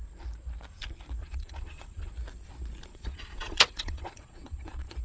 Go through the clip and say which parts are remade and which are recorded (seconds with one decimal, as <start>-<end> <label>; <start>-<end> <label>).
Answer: 0.0-1.2 recorded; 1.2-2.1 remade; 2.1-2.9 recorded; 2.9-5.0 remade